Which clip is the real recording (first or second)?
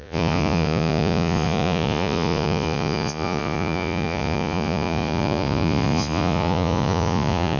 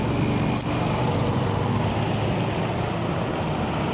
second